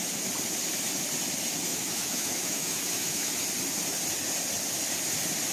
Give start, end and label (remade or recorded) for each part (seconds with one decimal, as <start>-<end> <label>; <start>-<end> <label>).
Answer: 0.0-1.7 recorded; 1.7-3.3 remade; 3.3-5.5 recorded